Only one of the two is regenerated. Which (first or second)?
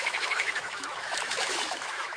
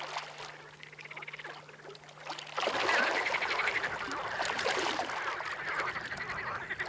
first